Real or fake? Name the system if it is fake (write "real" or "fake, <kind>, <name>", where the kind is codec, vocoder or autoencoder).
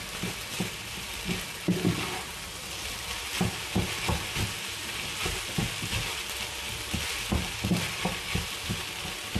real